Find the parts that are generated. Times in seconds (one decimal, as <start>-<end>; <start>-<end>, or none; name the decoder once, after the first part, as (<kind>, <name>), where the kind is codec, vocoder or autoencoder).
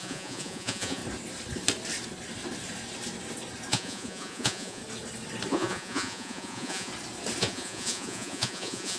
0.0-1.0 (vocoder, Vocos); 3.7-4.8; 5.5-6.9; 7.4-9.0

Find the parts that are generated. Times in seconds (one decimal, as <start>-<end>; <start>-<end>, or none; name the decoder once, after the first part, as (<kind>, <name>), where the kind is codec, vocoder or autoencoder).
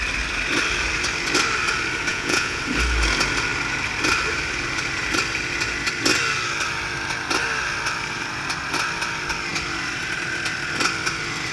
2.1-2.6 (vocoder, Vocos)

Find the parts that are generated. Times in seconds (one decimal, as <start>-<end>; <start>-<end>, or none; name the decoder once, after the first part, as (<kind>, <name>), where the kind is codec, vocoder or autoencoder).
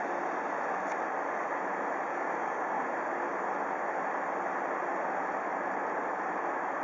2.1-2.8 (codec, DAC)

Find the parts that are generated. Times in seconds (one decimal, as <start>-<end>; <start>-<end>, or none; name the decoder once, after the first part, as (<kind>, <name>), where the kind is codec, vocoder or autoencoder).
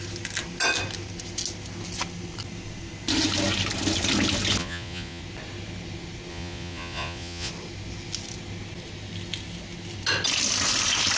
4.6-5.2 (vocoder, Vocos); 6.3-7.5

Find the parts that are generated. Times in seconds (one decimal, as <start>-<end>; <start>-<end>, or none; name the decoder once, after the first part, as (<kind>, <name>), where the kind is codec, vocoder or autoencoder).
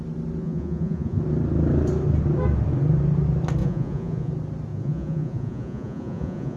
0.4-1.2 (vocoder, Vocos); 3.6-4.3; 4.7-6.6